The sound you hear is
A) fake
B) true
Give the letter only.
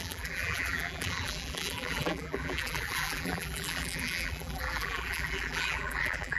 A